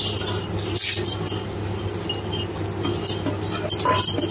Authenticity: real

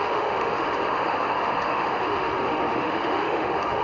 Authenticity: fake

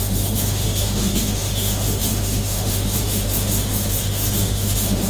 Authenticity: fake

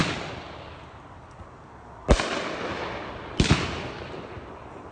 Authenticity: real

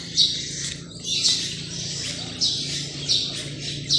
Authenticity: real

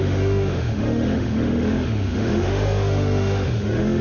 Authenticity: fake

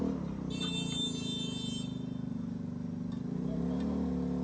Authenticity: real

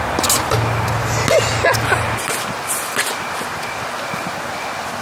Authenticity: real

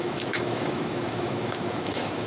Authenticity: fake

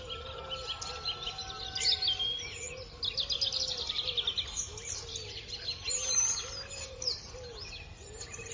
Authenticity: real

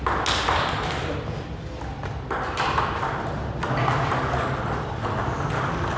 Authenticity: real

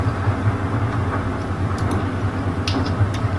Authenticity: real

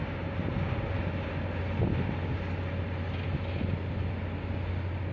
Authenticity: real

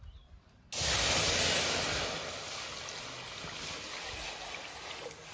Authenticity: real